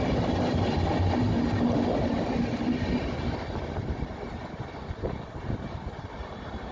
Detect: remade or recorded recorded